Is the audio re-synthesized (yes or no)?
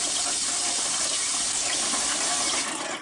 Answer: no